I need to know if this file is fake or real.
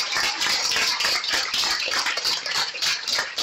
fake